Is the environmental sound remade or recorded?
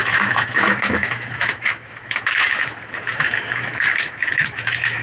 remade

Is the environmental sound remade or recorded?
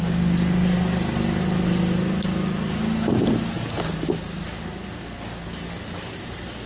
recorded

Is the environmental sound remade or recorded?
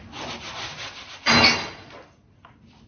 recorded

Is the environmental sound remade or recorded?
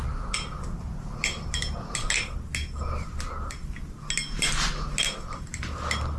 recorded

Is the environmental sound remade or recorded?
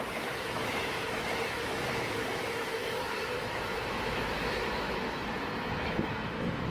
remade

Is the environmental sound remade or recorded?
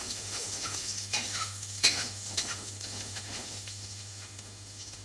remade